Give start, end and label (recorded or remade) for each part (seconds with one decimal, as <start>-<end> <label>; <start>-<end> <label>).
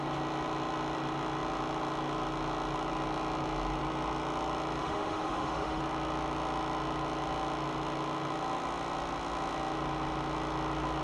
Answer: 0.0-4.8 recorded; 4.8-5.8 remade; 5.8-11.0 recorded